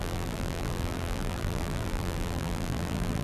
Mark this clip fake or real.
fake